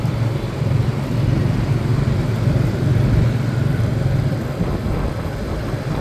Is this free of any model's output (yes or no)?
yes